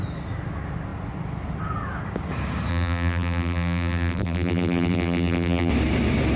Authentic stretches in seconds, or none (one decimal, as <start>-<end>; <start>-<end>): 0.0-2.7; 5.7-6.4